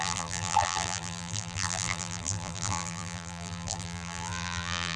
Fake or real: fake